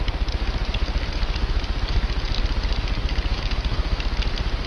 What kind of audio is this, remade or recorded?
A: recorded